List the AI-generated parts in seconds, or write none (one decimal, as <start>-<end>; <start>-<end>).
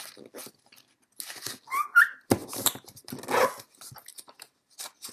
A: 2.4-3.1; 4.1-5.1